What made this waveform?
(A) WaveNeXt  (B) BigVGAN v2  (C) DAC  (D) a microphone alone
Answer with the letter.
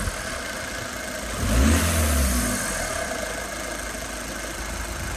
D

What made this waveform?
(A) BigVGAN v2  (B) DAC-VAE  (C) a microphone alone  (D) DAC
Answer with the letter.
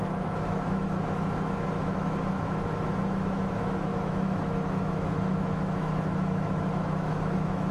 B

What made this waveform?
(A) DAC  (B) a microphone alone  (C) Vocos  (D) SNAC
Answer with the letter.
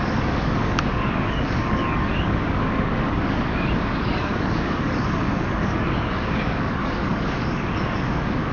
A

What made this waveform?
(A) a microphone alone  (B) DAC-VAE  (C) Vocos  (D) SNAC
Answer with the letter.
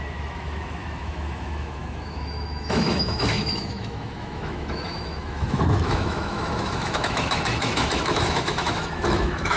B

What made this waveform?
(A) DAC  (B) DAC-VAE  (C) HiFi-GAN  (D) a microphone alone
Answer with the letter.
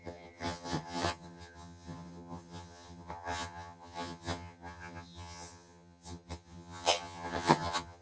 C